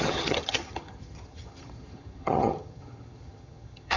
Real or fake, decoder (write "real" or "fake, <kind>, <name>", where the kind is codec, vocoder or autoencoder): fake, vocoder, HiFi-GAN